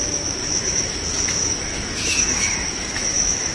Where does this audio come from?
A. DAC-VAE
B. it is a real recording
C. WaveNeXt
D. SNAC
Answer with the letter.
A